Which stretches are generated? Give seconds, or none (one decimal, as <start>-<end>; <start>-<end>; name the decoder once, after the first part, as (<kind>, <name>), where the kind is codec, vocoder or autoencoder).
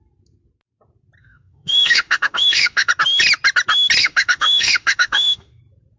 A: 1.2-2.9 (autoencoder, DAC-VAE); 4.0-5.6